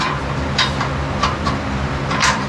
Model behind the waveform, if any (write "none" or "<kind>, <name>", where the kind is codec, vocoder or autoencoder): vocoder, BigVGAN v2